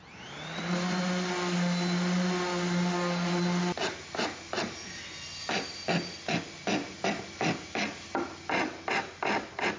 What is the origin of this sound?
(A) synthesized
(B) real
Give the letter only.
B